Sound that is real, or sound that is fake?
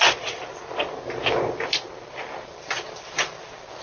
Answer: real